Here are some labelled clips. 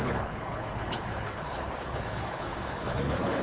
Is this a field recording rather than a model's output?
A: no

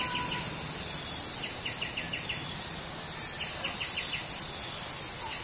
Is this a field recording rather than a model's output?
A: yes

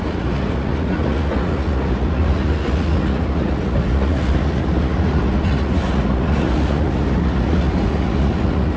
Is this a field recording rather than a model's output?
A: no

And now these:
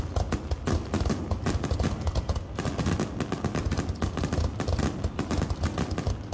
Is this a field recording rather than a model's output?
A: yes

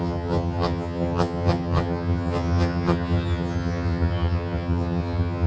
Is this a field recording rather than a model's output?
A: no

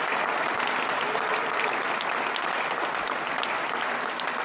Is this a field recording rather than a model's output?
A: yes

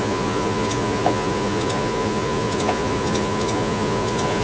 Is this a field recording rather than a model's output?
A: no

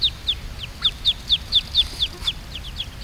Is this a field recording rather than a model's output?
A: yes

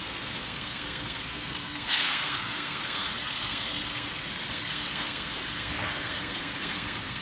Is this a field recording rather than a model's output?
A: no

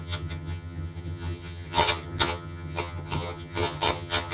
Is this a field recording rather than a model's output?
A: no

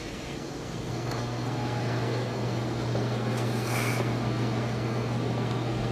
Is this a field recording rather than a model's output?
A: no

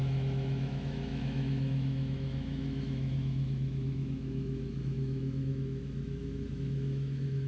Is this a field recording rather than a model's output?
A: no